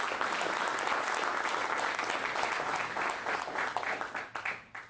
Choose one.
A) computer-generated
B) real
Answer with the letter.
B